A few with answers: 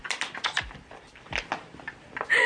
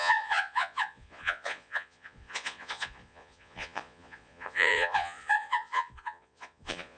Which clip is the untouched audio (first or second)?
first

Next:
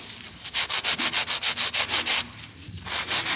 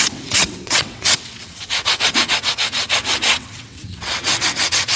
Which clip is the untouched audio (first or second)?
first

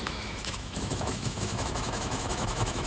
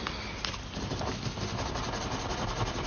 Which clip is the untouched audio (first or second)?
second